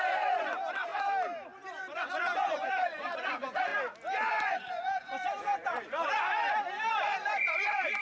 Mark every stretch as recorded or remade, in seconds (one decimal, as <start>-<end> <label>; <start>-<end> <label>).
0.0-0.9 remade; 0.9-1.7 recorded; 1.7-3.7 remade; 3.7-4.3 recorded; 4.3-6.3 remade; 6.3-6.9 recorded; 6.9-8.0 remade

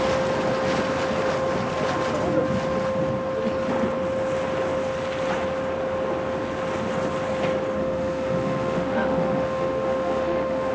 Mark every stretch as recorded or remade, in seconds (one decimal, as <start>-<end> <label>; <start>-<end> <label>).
0.0-7.8 recorded; 7.8-10.7 remade